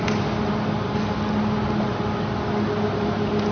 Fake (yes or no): no